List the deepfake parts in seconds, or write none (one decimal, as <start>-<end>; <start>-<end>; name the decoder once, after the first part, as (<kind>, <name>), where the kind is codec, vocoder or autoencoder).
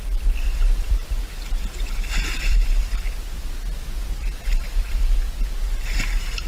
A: 2.5-3.4 (vocoder, BigVGAN v2); 4.6-5.6